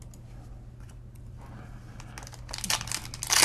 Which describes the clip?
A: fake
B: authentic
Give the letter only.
B